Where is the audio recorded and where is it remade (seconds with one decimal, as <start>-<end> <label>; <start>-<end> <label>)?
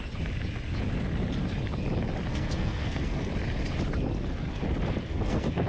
0.0-2.3 recorded; 2.3-3.3 remade; 3.3-5.1 recorded; 5.1-5.7 remade